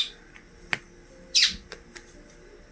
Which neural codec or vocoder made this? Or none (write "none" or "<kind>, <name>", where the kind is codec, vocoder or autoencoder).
none